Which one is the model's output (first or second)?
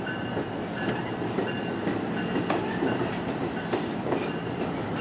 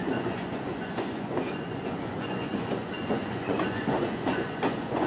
second